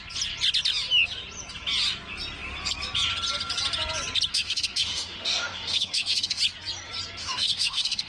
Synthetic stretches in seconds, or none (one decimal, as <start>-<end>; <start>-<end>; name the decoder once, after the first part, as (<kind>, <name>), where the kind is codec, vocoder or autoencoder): 4.3-6.4 (autoencoder, DAC-VAE); 7.2-8.1